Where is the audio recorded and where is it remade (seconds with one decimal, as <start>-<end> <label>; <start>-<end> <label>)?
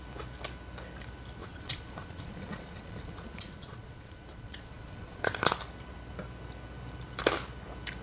0.0-1.4 recorded; 1.4-5.5 remade; 5.5-8.0 recorded